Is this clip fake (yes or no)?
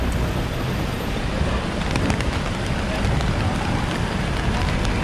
no